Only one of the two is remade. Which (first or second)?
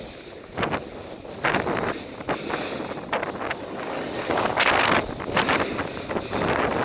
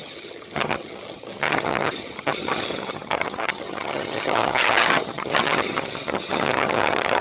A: second